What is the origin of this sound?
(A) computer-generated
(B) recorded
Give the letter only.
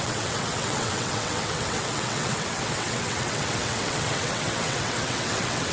A